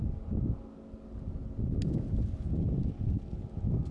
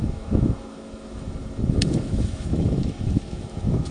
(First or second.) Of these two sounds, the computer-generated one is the second